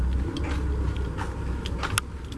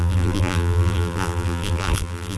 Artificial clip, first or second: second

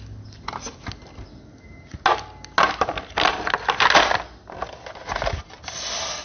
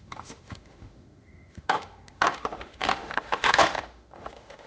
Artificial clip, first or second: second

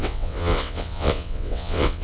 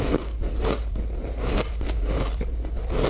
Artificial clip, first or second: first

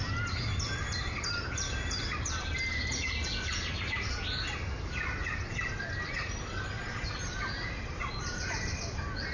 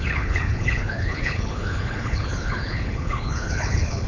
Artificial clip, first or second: second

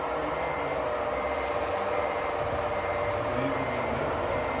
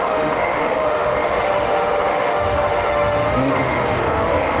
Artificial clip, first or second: second